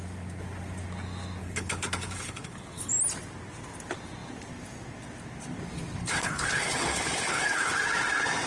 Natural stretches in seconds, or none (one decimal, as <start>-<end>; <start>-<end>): 0.0-1.4; 2.9-6.0; 7.7-8.5